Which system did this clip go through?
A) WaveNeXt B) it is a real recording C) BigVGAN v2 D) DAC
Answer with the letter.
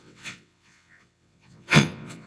A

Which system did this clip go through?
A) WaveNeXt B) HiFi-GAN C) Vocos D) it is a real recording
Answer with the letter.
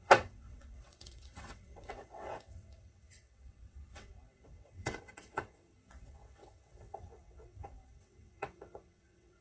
A